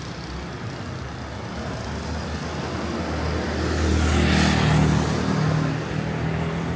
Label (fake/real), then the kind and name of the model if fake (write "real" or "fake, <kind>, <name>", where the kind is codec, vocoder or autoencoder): real